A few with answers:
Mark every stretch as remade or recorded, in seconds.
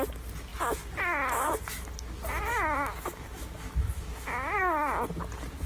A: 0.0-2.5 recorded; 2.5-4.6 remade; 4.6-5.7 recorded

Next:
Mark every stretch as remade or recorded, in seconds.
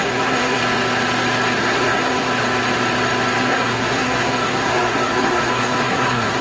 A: 0.0-0.6 remade; 0.6-1.6 recorded; 1.6-2.3 remade; 2.3-3.4 recorded; 3.4-6.4 remade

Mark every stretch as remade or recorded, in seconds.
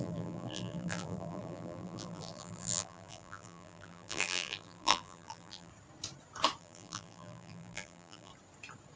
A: 0.0-5.7 remade; 5.7-6.6 recorded; 6.6-8.3 remade; 8.3-9.0 recorded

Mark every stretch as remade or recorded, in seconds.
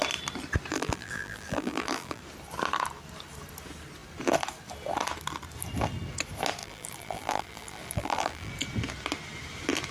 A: 0.0-0.7 recorded; 0.7-2.2 remade; 2.2-6.6 recorded; 6.6-8.5 remade; 8.5-9.9 recorded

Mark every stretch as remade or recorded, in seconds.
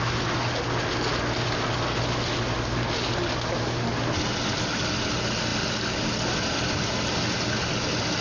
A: 0.0-8.2 recorded